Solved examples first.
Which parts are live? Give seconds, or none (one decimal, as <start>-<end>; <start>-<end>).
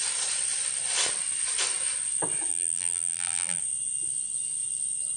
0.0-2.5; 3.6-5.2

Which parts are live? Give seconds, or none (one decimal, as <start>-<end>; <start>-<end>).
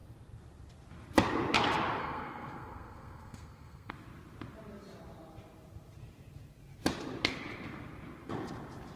0.0-2.0; 3.9-9.0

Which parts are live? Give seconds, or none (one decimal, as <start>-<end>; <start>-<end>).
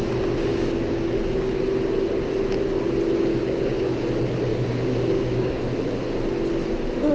0.0-0.5; 1.6-3.3; 4.0-4.5; 5.6-7.1